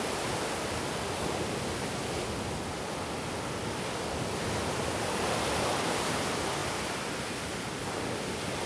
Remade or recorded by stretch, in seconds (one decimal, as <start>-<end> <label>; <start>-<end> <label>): 0.0-8.7 recorded